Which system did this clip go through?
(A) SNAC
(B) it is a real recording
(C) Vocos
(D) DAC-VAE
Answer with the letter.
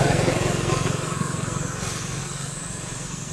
A